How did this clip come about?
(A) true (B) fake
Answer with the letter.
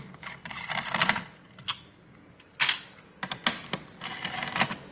A